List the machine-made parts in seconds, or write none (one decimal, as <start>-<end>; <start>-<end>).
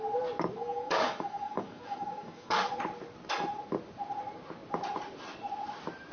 0.6-2.7